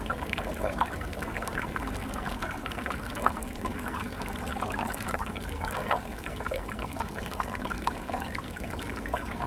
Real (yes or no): no